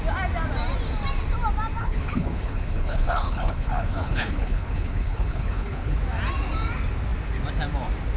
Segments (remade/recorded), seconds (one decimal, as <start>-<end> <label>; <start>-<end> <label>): 0.0-1.8 recorded; 1.8-6.0 remade; 6.0-8.2 recorded